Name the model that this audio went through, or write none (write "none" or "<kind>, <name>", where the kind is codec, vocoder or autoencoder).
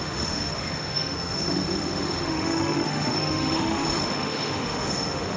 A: autoencoder, DAC-VAE